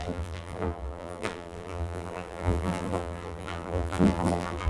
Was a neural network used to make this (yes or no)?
yes